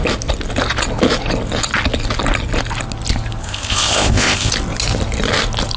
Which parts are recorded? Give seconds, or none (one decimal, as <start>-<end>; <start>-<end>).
0.0-3.4; 4.5-5.8